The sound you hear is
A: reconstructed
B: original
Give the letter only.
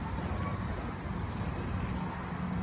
B